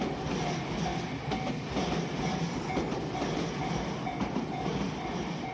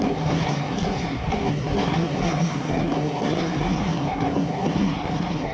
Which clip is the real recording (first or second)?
first